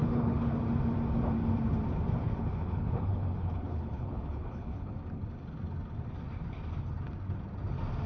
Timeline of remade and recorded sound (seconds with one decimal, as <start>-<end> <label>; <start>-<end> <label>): 0.0-0.6 remade; 0.6-2.2 recorded; 2.2-4.9 remade; 4.9-8.1 recorded